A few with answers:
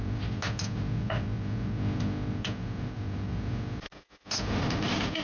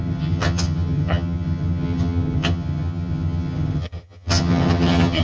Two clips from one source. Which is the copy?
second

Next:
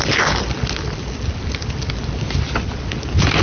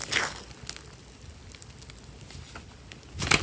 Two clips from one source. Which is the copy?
first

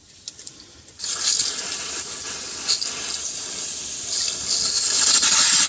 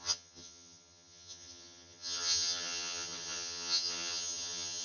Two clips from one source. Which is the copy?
second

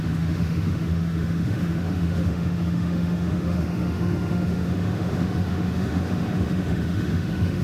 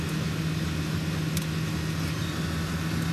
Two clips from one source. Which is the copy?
first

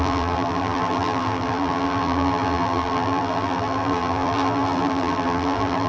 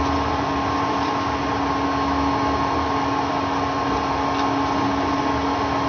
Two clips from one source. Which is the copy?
first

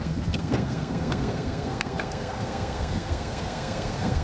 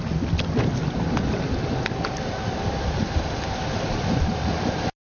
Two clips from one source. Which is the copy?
first